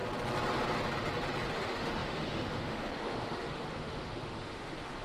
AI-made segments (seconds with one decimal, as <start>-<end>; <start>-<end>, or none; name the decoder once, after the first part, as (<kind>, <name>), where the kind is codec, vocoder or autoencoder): 1.5-5.0 (autoencoder, DAC-VAE)